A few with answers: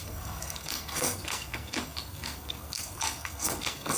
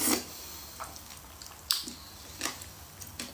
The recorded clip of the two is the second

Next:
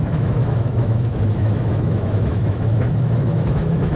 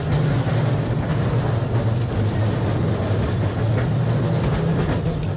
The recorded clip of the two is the second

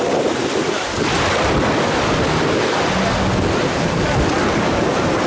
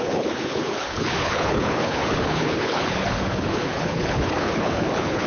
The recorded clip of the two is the first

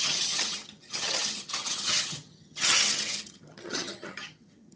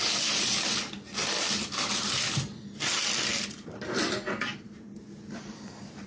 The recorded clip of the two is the second